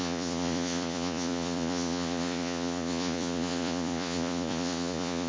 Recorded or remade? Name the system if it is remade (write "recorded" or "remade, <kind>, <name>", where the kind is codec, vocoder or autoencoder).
remade, vocoder, Vocos